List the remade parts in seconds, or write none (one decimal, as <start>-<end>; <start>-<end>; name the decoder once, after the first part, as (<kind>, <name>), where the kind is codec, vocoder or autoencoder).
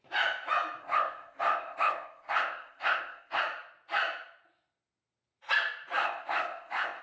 0.8-3.4 (codec, ZipCodec); 6.0-7.0